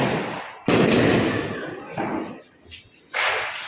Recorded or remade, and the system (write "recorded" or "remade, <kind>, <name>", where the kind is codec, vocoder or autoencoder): recorded